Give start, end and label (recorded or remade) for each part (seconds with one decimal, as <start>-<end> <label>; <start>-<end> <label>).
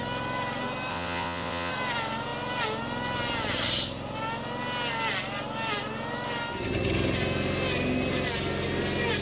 0.0-0.9 recorded; 0.9-1.7 remade; 1.7-9.2 recorded